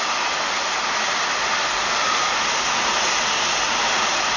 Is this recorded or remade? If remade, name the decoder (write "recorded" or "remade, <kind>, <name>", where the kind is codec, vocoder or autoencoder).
recorded